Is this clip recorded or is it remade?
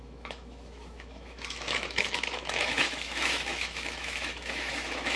remade